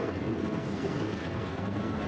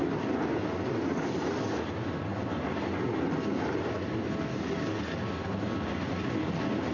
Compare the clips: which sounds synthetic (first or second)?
first